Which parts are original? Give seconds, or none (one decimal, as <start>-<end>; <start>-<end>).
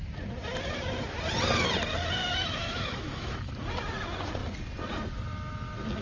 0.0-2.2; 3.5-6.0